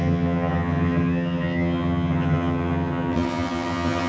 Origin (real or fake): fake